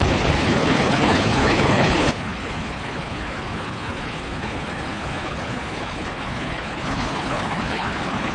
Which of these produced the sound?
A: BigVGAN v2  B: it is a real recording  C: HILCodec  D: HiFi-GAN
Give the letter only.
C